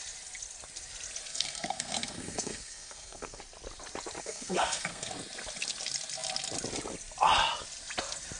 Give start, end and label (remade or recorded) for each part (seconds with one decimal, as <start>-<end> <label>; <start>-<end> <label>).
0.0-1.3 recorded; 1.3-3.4 remade; 3.4-4.2 recorded; 4.2-5.1 remade; 5.1-8.4 recorded